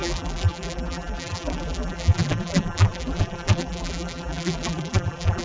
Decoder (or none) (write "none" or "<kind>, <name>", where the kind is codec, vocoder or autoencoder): vocoder, BigVGAN v2